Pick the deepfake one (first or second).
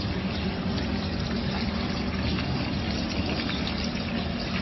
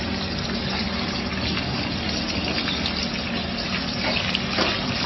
first